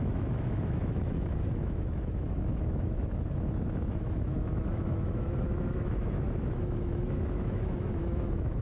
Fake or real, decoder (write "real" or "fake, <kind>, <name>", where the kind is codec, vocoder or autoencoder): fake, autoencoder, DAC-VAE